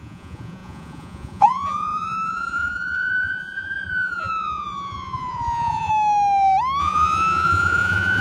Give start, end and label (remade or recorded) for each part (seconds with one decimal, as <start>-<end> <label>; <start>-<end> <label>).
0.0-5.9 remade; 5.9-6.8 recorded; 6.8-8.2 remade

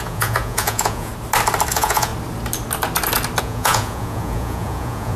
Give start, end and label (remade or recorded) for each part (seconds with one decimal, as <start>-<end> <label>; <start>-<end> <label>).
0.0-1.1 remade; 1.1-1.7 recorded; 1.7-2.1 remade; 2.1-3.4 recorded; 3.4-5.2 remade